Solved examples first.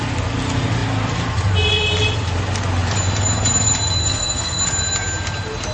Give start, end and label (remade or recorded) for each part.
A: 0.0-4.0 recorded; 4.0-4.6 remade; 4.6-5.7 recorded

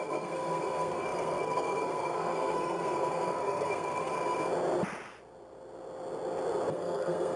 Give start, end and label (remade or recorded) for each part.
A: 0.0-4.1 remade; 4.1-6.7 recorded; 6.7-7.4 remade